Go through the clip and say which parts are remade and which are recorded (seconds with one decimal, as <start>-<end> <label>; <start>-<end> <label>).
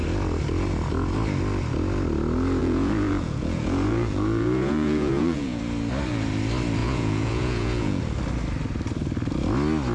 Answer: 0.0-2.6 recorded; 2.6-5.6 remade; 5.6-6.8 recorded; 6.8-8.0 remade; 8.0-9.9 recorded